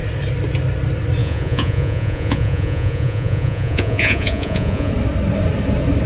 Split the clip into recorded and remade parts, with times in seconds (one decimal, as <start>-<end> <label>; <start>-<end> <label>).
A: 0.0-1.2 recorded; 1.2-4.9 remade; 4.9-6.1 recorded